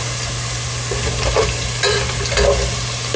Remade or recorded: recorded